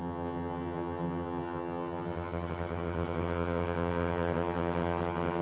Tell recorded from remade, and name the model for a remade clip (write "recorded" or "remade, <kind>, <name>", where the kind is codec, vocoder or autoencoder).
remade, vocoder, HiFi-GAN